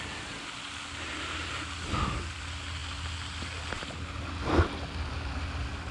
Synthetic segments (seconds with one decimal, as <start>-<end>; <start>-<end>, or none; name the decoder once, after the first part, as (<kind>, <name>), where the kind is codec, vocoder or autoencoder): none